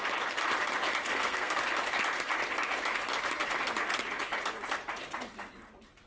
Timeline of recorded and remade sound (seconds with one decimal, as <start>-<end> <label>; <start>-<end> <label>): 0.0-1.1 recorded; 1.1-1.6 remade; 1.6-6.1 recorded